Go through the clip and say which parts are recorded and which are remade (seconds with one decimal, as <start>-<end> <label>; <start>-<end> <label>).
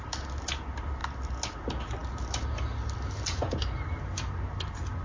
0.0-5.0 recorded